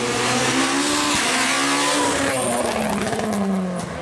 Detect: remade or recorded recorded